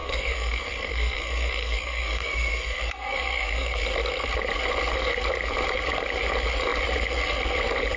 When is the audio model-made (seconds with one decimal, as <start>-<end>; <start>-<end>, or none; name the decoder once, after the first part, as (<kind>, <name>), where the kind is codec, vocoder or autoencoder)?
0.0-3.8 (codec, SNAC)